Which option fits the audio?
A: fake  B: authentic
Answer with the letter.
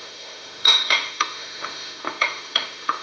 A